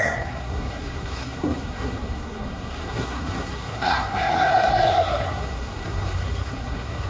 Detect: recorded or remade remade